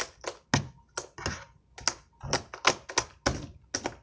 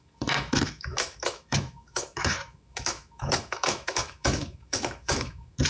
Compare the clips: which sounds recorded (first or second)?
first